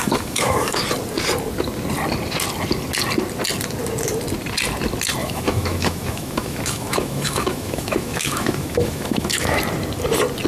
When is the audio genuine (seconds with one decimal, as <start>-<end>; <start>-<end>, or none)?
0.8-5.2; 9.6-10.5